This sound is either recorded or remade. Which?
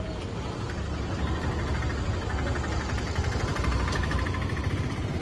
recorded